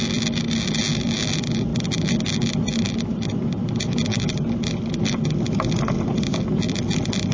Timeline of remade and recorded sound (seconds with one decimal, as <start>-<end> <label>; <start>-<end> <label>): 0.0-7.3 recorded